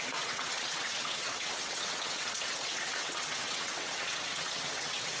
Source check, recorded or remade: remade